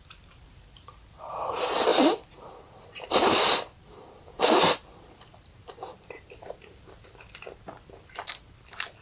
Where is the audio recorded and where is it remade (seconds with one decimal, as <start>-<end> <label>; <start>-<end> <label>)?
0.0-9.0 remade